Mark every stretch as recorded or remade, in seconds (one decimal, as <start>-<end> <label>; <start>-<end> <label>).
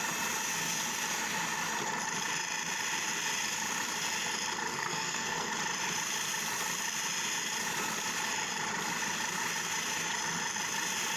0.0-4.7 recorded; 4.7-5.5 remade; 5.5-11.2 recorded